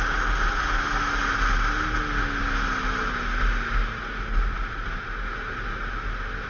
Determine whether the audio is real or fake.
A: real